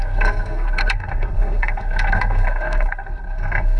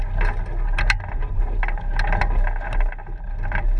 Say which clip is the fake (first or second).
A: first